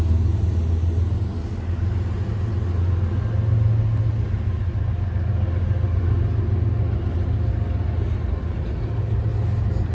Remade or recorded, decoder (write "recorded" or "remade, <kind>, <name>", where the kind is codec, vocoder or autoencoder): recorded